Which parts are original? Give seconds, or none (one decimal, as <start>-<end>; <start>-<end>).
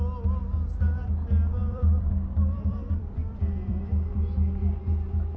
0.0-1.6; 4.1-5.4